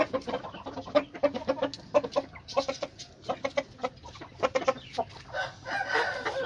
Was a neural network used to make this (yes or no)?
no